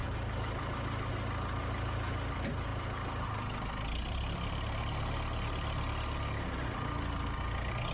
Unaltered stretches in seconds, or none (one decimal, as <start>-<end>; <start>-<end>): 1.1-7.9